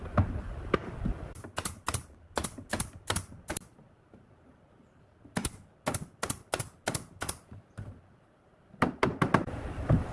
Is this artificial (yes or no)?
no